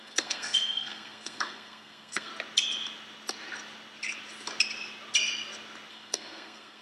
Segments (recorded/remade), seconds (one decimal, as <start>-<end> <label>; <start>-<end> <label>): 0.0-2.3 remade; 2.3-5.9 recorded; 5.9-6.8 remade